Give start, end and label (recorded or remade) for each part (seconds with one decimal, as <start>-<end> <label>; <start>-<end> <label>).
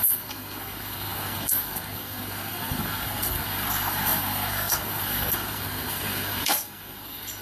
0.0-7.4 remade